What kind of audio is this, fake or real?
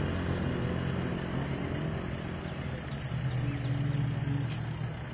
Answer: real